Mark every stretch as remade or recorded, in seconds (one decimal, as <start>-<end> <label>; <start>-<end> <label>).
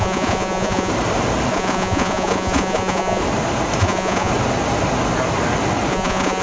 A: 0.0-0.9 remade; 0.9-1.5 recorded; 1.5-3.2 remade; 3.2-3.8 recorded; 3.8-4.3 remade; 4.3-5.9 recorded; 5.9-6.4 remade